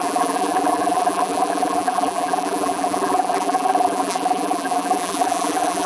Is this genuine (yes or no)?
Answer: no